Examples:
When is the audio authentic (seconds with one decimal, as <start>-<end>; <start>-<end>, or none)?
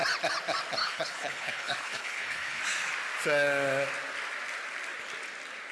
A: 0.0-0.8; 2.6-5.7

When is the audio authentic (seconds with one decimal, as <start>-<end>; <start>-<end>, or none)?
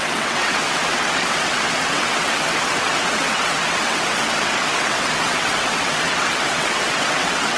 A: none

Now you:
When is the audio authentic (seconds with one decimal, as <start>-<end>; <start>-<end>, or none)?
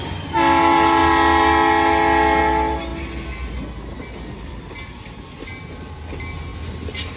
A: 0.0-7.2